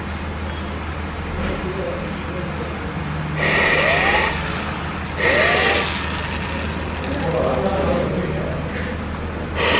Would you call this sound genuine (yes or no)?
yes